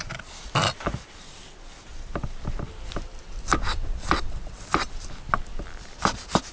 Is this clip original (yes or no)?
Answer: yes